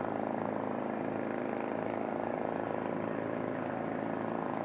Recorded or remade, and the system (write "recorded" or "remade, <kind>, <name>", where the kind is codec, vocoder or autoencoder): recorded